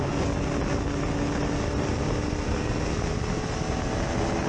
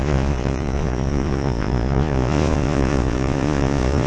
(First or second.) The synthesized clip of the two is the second